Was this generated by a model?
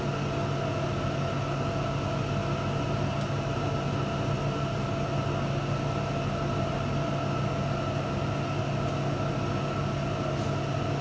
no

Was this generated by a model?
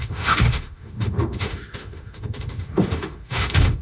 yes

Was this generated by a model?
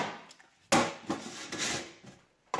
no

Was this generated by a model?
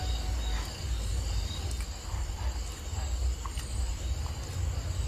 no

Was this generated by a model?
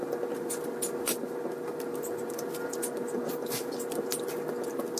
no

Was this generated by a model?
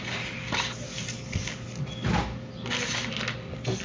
no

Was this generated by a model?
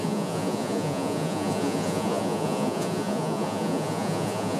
yes